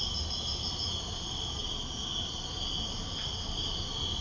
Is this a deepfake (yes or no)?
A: no